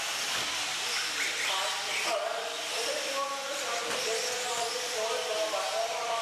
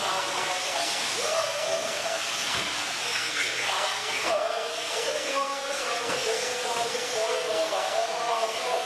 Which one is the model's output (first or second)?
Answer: second